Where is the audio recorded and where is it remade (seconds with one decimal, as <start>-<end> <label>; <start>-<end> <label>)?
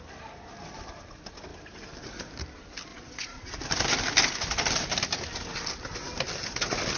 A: 0.0-2.9 recorded; 2.9-3.6 remade; 3.6-7.0 recorded